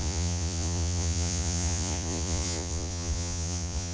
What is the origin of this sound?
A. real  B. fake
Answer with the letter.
B